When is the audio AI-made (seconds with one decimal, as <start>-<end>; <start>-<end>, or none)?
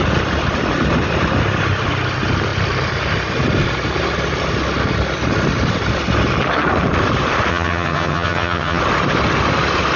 7.5-8.8